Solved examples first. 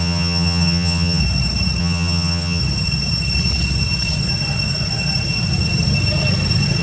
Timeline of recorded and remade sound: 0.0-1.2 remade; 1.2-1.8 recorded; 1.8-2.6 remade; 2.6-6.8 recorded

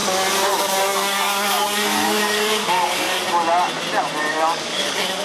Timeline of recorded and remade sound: 0.0-0.5 recorded; 0.5-3.2 remade; 3.2-4.3 recorded; 4.3-5.2 remade

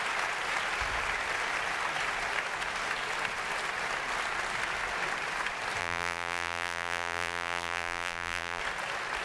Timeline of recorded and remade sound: 0.0-5.8 recorded; 5.8-8.6 remade; 8.6-9.2 recorded

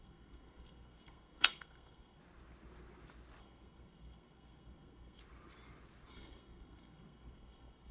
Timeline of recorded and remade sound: 0.0-2.2 remade; 2.2-3.4 recorded; 3.4-5.2 remade; 5.2-6.1 recorded; 6.1-7.9 remade